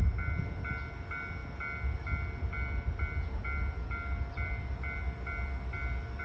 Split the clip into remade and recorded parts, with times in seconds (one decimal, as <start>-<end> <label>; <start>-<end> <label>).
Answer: 0.0-6.2 recorded